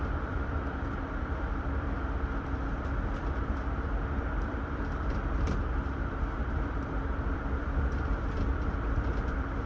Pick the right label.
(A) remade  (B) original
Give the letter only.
A